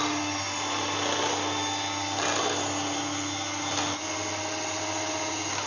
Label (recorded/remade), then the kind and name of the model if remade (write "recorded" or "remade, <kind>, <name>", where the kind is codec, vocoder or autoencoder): recorded